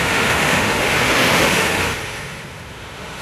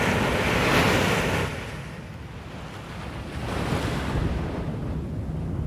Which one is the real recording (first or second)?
second